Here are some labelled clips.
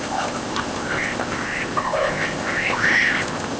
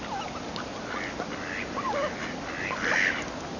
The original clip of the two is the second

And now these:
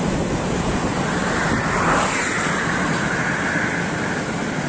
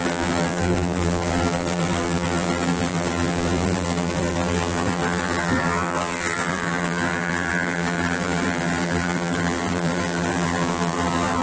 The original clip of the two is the first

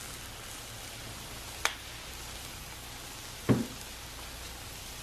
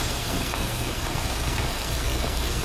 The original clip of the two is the first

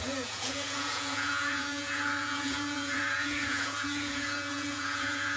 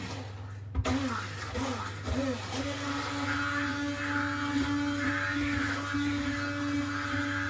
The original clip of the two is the second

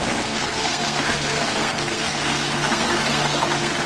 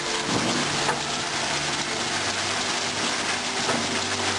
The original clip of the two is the second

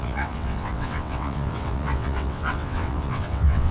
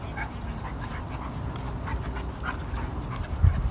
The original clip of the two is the second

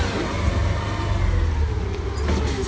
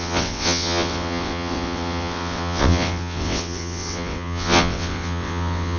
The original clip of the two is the first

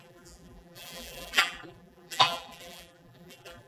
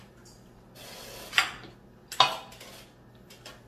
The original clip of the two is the second